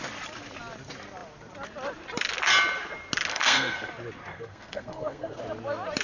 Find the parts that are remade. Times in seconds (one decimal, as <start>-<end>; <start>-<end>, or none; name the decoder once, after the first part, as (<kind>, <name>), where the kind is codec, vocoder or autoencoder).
3.3-3.9 (codec, SNAC); 4.3-5.4